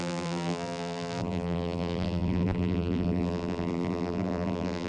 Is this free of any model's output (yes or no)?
no